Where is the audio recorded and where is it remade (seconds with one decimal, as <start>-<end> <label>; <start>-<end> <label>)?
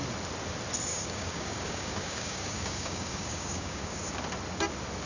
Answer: 0.0-0.9 recorded; 0.9-4.0 remade; 4.0-5.1 recorded